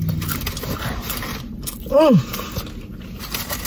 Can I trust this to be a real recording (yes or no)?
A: yes